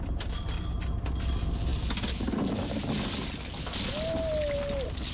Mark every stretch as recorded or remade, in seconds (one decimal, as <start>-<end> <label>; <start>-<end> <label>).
0.0-5.1 recorded